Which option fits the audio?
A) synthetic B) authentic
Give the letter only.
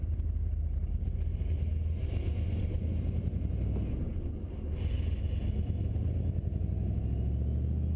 B